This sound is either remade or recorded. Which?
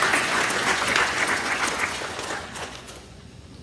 remade